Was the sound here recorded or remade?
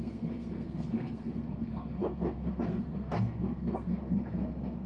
remade